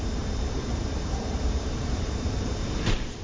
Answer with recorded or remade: remade